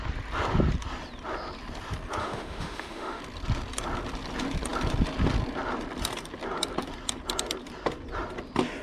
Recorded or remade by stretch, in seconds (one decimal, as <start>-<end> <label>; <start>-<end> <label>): 0.0-2.2 recorded; 2.2-3.2 remade; 3.2-8.8 recorded